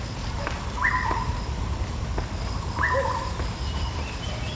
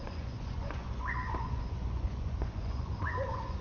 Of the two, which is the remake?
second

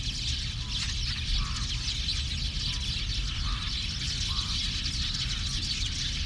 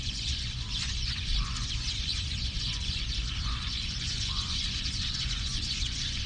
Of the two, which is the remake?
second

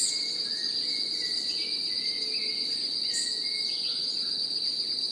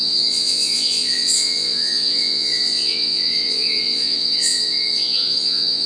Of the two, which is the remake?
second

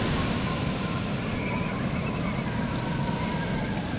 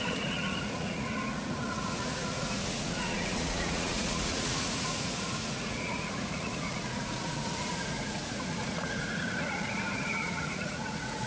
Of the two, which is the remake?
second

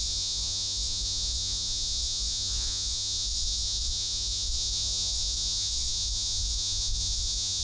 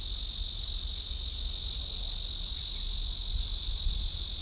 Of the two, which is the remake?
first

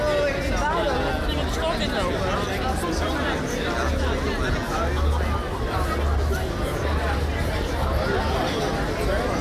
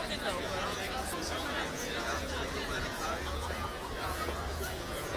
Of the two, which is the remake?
second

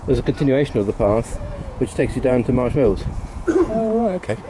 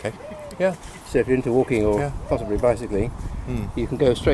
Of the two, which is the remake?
first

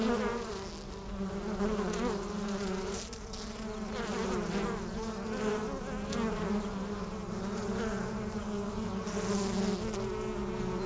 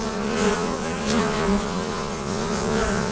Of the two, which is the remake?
second